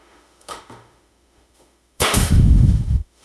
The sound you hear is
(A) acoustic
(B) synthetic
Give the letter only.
B